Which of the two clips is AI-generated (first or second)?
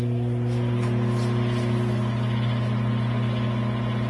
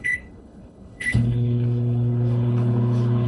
second